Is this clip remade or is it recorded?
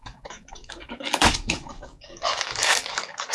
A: remade